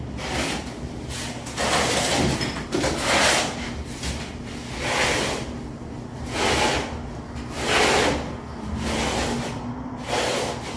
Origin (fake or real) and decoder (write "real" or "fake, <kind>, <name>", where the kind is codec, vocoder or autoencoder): real